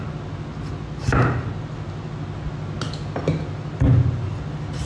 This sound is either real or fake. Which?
real